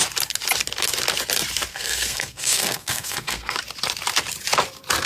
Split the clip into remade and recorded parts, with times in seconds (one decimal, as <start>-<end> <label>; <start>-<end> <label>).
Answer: 0.0-1.7 recorded; 1.7-3.6 remade; 3.6-5.1 recorded